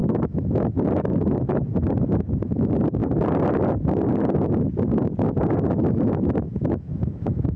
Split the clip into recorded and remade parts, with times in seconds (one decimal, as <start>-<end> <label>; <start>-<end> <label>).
0.0-1.7 remade; 1.7-2.4 recorded; 2.4-3.0 remade; 3.0-6.1 recorded; 6.1-7.6 remade